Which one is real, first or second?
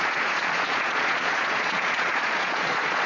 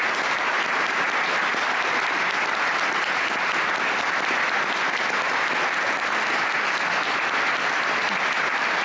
second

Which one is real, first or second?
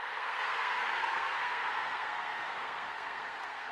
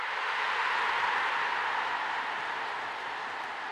second